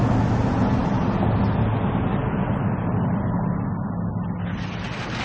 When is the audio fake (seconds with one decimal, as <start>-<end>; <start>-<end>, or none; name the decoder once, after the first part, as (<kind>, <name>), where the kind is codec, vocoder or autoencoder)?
none